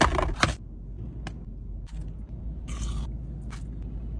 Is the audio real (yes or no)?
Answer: yes